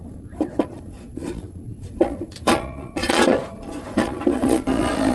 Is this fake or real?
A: fake